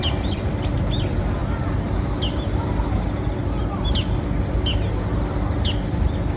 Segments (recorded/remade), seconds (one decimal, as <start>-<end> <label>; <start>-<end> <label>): 0.0-6.4 recorded